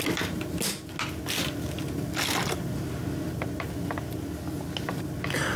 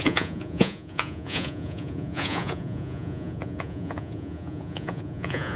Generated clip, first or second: second